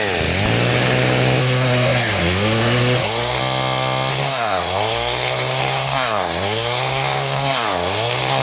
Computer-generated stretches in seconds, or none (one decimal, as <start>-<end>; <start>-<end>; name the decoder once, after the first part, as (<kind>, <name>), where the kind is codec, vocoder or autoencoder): 1.4-3.4 (codec, SNAC); 4.1-8.4